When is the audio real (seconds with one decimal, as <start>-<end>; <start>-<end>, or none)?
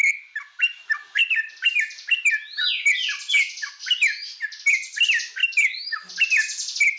0.0-5.4; 6.1-7.0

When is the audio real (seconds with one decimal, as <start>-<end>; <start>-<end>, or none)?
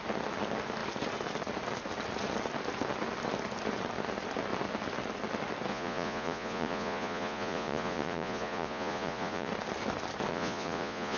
0.0-5.7; 9.5-10.3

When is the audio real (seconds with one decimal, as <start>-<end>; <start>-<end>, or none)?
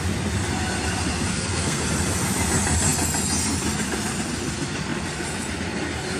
0.0-1.3; 1.8-6.2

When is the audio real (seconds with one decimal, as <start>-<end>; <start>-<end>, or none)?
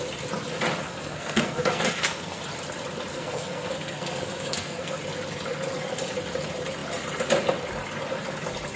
0.0-0.8; 2.4-3.1; 5.0-8.8